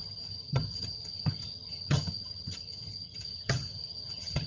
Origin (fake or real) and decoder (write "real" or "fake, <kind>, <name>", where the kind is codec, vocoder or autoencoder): fake, vocoder, HiFi-GAN